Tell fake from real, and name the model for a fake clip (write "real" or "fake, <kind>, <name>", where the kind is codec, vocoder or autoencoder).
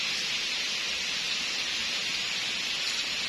real